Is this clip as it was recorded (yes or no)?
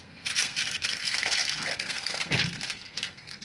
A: no